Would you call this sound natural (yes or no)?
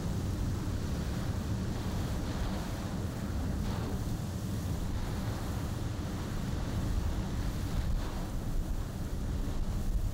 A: yes